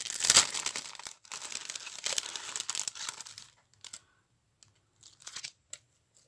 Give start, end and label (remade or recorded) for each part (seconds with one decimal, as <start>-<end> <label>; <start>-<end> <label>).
0.0-5.2 recorded; 5.2-5.7 remade; 5.7-6.3 recorded